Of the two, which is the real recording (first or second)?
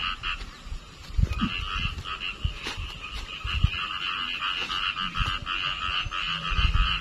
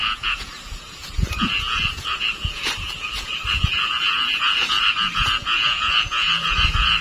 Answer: first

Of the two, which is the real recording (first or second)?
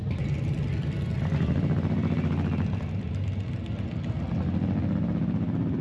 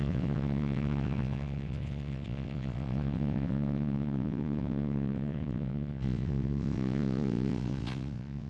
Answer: first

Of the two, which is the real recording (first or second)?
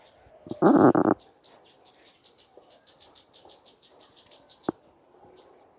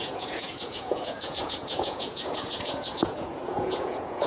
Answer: first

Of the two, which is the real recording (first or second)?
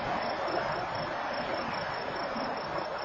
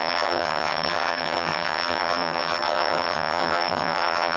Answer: first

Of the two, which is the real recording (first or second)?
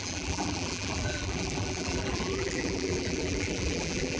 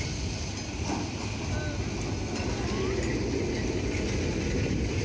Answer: second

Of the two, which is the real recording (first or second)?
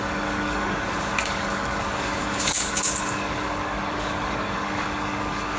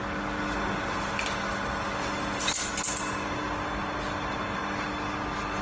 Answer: second